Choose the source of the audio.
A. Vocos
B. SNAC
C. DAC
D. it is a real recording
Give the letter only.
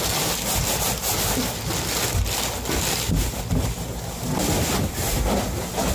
D